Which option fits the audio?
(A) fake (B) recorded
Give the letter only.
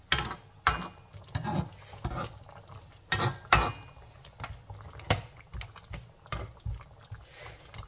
B